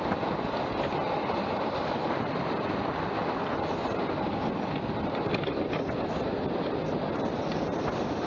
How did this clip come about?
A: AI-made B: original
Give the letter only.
B